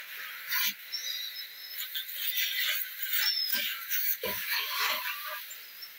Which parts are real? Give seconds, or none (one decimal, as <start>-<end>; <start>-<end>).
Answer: 0.0-3.5; 5.0-6.0